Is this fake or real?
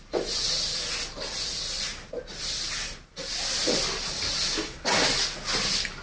real